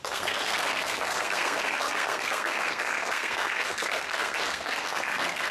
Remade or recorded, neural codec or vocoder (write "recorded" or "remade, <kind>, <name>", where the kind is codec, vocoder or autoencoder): remade, codec, SNAC